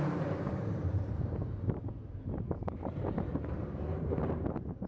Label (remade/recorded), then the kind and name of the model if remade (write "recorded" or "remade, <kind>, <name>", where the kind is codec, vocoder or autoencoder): remade, vocoder, BigVGAN v2